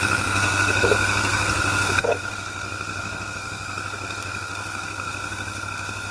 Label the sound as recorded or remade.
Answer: remade